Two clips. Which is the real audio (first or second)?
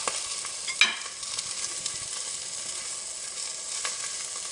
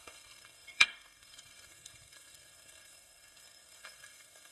first